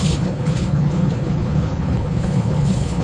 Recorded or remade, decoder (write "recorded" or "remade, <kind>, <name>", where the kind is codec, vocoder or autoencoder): remade, codec, HILCodec